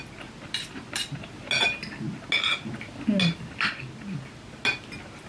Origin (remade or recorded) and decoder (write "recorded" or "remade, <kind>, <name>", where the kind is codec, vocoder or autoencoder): recorded